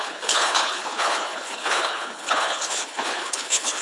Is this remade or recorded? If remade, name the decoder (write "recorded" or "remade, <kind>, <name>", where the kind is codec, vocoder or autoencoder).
remade, codec, HILCodec